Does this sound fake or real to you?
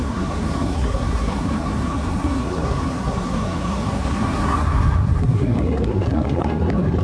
fake